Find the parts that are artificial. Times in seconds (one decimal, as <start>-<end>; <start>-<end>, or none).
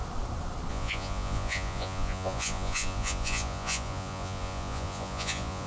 0.7-5.7